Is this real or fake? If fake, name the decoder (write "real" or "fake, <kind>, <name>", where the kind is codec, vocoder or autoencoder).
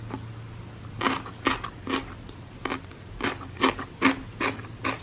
real